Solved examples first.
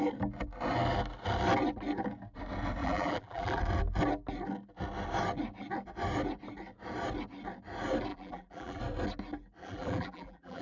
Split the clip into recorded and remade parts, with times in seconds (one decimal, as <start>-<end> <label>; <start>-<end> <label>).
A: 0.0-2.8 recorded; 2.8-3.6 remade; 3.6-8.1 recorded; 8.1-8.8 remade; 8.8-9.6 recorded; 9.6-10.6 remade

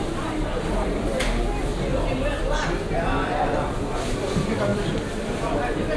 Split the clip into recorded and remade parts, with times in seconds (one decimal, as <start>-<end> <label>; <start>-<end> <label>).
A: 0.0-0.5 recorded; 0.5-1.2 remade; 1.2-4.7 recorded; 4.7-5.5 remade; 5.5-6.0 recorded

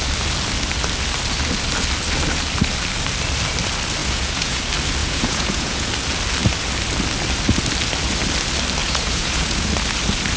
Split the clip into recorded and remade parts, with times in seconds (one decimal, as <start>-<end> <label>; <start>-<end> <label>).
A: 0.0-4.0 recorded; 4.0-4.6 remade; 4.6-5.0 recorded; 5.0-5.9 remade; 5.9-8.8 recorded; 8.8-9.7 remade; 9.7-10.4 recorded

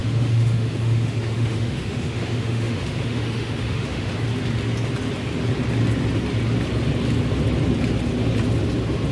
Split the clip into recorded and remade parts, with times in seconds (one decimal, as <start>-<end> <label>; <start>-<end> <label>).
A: 0.0-4.1 remade; 4.1-9.1 recorded

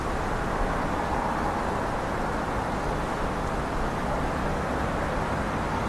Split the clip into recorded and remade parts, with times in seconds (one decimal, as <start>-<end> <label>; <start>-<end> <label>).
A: 0.0-5.9 recorded

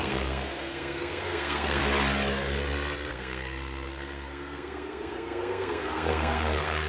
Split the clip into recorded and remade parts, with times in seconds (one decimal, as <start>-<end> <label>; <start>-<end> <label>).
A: 0.0-1.8 remade; 1.8-3.1 recorded; 3.1-6.9 remade

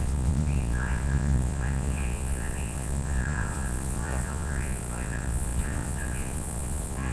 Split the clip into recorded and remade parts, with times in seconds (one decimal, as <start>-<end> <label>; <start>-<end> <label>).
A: 0.0-7.1 remade

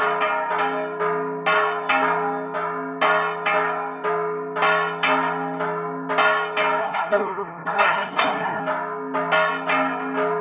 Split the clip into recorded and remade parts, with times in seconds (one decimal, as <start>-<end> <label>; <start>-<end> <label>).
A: 0.0-6.8 recorded; 6.8-8.6 remade; 8.6-10.4 recorded